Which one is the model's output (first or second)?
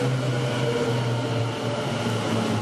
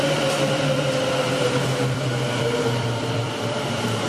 second